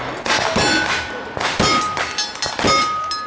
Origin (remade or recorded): recorded